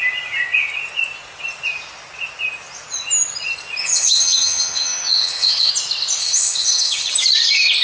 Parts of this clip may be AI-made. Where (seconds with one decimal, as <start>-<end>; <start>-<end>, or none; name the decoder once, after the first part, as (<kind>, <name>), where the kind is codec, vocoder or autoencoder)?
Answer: 3.8-5.7 (vocoder, HiFi-GAN); 6.2-7.1